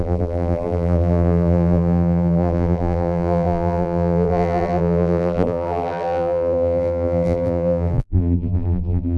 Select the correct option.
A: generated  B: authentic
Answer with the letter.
A